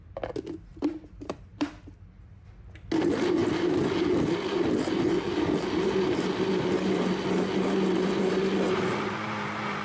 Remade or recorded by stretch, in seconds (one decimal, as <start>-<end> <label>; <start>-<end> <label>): 0.0-0.7 recorded; 0.7-1.7 remade; 1.7-9.8 recorded